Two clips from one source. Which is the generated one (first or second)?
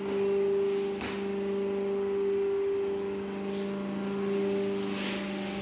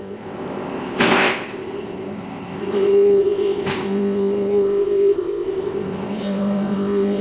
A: second